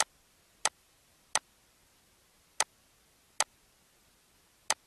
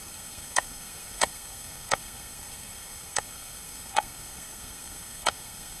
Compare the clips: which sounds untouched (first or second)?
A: first